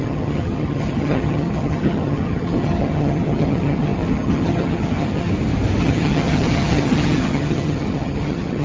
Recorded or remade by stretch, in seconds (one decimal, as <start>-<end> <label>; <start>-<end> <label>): 0.0-5.3 remade; 5.3-5.8 recorded; 5.8-8.6 remade